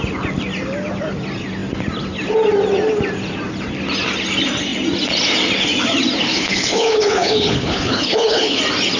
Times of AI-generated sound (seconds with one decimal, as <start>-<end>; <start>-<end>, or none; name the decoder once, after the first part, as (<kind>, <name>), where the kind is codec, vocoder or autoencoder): 6.3-8.6 (codec, HILCodec)